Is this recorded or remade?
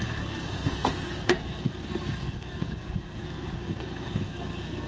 remade